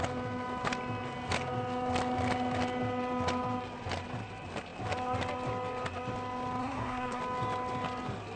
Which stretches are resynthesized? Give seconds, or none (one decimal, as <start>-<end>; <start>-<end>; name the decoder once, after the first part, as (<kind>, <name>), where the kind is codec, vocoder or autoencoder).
6.6-7.2 (codec, SNAC)